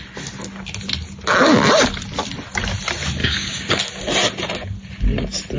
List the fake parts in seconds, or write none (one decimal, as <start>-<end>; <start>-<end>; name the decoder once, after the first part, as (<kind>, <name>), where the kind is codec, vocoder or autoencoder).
3.2-3.8 (codec, DAC)